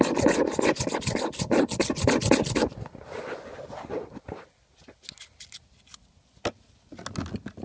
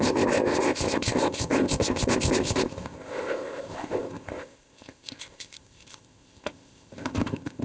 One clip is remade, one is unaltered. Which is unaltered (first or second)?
first